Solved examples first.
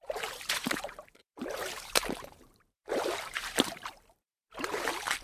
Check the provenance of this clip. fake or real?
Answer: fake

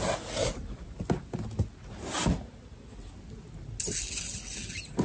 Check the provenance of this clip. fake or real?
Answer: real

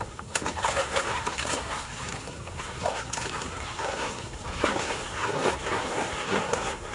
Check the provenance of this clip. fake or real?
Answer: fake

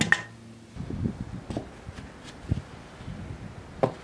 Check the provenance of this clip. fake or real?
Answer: real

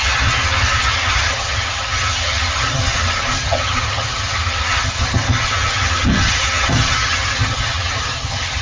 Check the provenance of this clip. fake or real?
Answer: fake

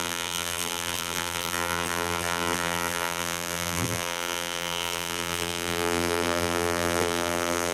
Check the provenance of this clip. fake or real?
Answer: fake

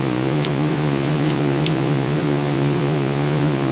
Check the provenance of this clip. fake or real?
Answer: fake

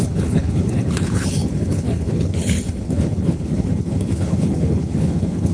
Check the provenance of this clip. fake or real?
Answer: fake